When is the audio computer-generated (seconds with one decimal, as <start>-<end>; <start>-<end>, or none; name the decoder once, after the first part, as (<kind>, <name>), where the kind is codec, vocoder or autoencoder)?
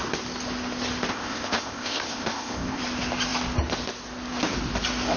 1.1-2.8 (codec, ZipCodec)